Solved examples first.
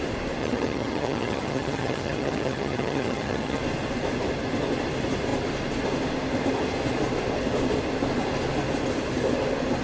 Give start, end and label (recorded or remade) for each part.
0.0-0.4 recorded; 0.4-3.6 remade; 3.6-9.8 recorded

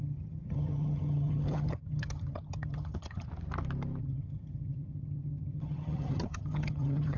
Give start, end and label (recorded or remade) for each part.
0.0-3.3 remade; 3.3-4.0 recorded; 4.0-7.2 remade

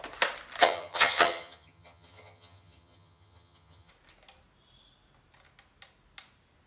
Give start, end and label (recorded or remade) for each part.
0.0-0.6 recorded; 0.6-3.9 remade; 3.9-6.7 recorded

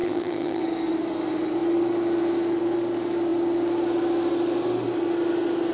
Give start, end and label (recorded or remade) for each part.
0.0-0.6 remade; 0.6-5.7 recorded

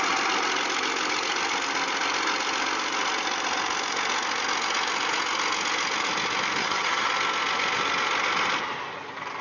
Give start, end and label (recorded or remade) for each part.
0.0-6.6 recorded; 6.6-7.1 remade; 7.1-9.4 recorded

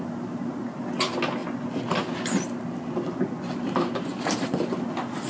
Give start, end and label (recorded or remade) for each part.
0.0-5.3 recorded